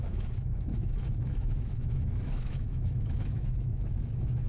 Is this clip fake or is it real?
fake